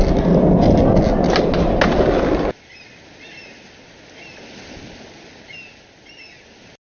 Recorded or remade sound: recorded